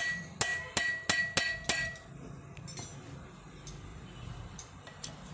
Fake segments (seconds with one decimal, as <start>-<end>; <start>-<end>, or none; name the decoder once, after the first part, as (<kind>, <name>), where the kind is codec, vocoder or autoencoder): 3.9-5.3 (vocoder, BigVGAN v2)